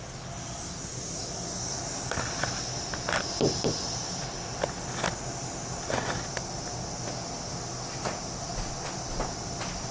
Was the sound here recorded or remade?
recorded